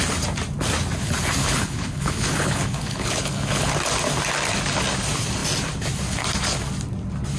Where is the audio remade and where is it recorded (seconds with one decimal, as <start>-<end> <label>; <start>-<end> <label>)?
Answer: 0.0-1.4 recorded; 1.4-3.7 remade; 3.7-7.4 recorded